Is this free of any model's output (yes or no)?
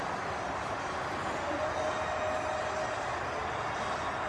yes